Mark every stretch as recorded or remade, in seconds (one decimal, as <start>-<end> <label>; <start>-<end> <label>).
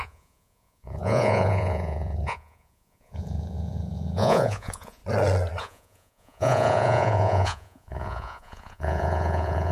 0.0-5.0 remade; 5.0-5.6 recorded; 5.6-9.7 remade